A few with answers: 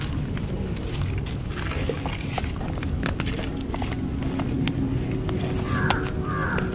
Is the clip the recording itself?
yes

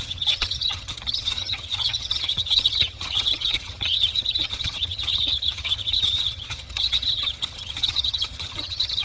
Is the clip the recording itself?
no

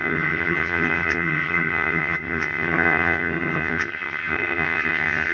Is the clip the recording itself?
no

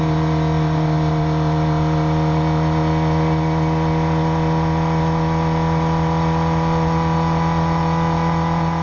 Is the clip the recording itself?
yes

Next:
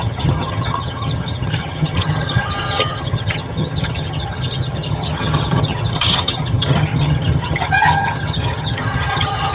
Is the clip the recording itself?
no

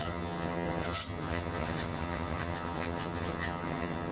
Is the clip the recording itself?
no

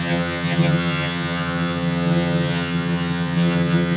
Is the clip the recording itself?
no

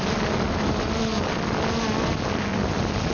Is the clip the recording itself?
yes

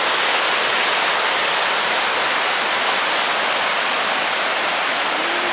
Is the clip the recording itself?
yes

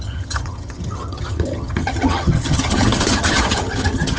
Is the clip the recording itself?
no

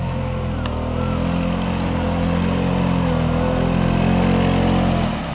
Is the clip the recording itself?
yes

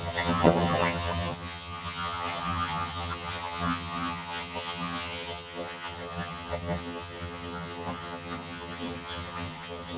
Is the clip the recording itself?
no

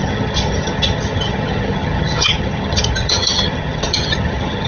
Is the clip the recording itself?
no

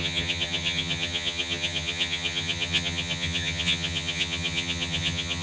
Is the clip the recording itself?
no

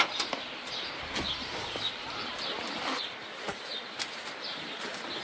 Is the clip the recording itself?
yes